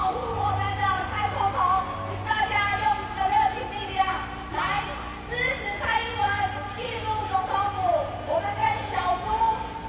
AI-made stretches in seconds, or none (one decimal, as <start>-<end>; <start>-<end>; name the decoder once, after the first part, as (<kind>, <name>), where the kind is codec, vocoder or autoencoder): 8.6-9.4 (vocoder, Vocos)